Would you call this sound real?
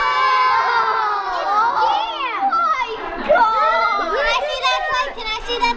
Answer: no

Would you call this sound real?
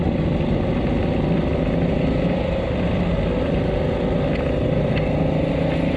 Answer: yes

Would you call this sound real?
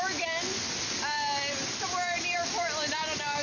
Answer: no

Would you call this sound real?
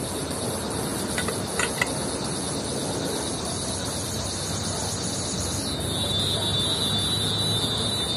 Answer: yes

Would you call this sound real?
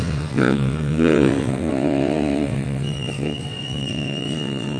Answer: no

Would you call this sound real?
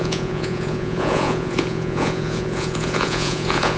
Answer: no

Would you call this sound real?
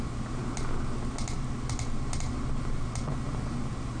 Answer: yes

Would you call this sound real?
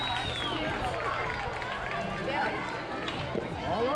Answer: yes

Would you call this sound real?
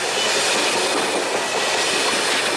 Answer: yes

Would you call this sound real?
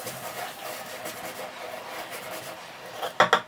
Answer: yes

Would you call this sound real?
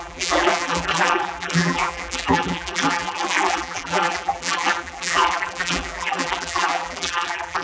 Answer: no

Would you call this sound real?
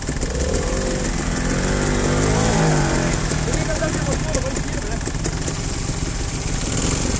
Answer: yes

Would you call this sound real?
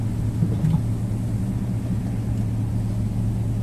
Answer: yes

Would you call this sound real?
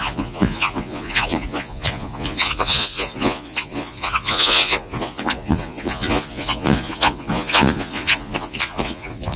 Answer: no